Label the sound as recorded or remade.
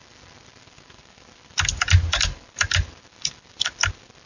recorded